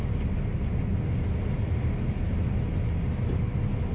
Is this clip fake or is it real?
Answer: real